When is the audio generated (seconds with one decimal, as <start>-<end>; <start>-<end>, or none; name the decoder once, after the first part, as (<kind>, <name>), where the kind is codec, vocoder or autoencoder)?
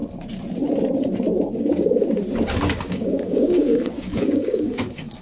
1.6-2.0 (codec, DAC); 2.8-5.2